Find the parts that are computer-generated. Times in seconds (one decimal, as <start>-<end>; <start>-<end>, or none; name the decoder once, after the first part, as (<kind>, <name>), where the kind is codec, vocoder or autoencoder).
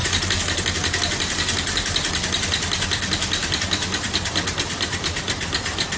none